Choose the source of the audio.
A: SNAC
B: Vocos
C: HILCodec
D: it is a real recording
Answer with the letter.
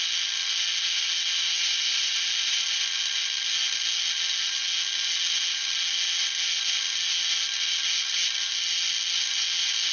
D